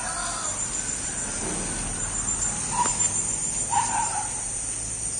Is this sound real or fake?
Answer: real